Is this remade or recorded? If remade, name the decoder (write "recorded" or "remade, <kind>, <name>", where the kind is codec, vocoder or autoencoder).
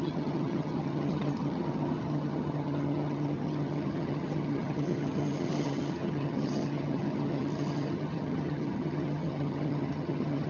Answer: remade, vocoder, HiFi-GAN